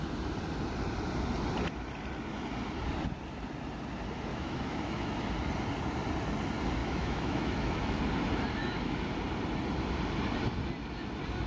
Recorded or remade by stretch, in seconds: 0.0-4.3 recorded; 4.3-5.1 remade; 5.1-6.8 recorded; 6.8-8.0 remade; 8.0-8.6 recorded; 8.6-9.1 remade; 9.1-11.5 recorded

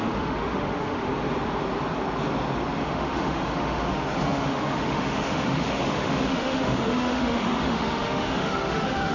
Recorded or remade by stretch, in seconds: 0.0-1.1 remade; 1.1-2.8 recorded; 2.8-9.1 remade

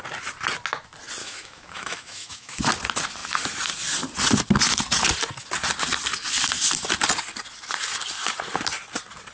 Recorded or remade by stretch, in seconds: 0.0-1.2 recorded; 1.2-2.6 remade; 2.6-9.3 recorded

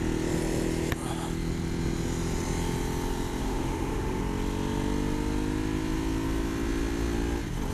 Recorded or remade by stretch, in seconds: 0.0-3.4 recorded; 3.4-4.2 remade; 4.2-7.7 recorded